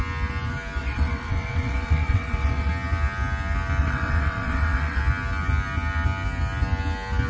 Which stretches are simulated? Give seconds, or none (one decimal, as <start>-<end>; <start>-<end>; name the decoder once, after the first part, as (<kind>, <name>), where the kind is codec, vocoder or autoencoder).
0.8-2.7 (vocoder, WaveNeXt); 3.8-5.0